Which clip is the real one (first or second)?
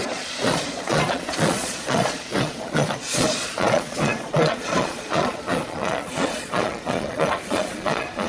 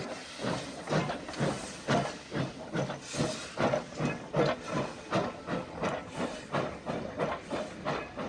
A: second